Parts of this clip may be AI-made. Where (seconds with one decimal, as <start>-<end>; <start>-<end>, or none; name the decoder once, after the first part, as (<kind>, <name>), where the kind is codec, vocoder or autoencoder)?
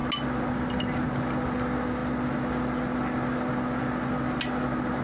none